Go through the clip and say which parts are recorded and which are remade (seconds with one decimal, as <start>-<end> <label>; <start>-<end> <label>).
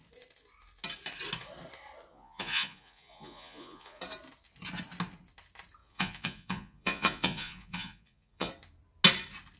0.0-2.1 recorded; 2.1-4.0 remade; 4.0-5.8 recorded; 5.8-8.5 remade; 8.5-9.6 recorded